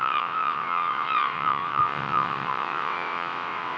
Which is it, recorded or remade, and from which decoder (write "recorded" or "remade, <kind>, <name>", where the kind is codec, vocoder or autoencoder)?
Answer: remade, vocoder, WaveNeXt